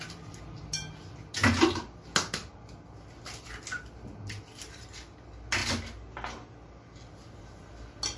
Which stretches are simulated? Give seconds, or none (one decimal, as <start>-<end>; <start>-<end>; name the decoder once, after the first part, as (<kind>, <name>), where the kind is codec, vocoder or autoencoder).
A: none